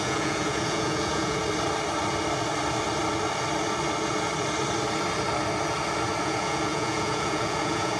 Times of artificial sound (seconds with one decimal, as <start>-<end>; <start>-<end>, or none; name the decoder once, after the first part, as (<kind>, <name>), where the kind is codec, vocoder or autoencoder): 0.0-1.4 (vocoder, Vocos); 6.2-8.0